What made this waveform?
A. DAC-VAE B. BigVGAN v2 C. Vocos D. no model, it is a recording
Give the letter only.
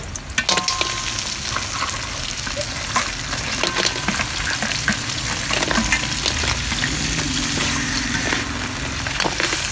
D